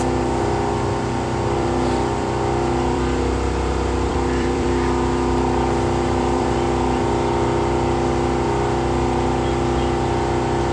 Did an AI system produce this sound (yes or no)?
yes